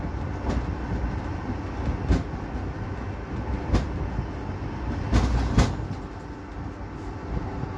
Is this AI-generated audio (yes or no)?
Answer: no